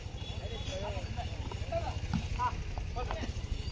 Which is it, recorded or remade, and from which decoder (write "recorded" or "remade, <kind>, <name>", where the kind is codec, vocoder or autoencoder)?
recorded